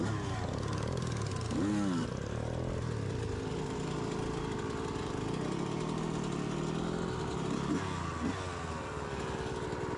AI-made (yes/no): no